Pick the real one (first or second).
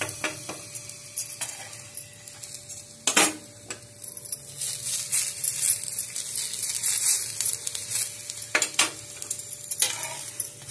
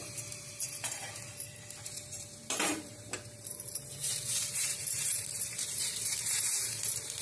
first